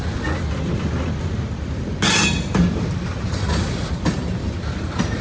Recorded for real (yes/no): yes